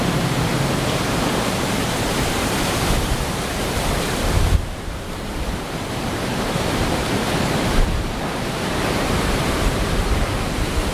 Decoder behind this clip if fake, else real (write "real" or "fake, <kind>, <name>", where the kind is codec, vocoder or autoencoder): fake, vocoder, BigVGAN v2